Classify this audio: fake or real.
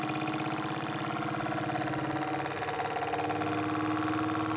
real